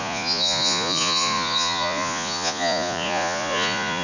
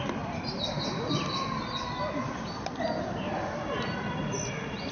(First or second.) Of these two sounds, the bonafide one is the second